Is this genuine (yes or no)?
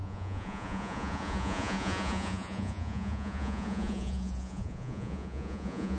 no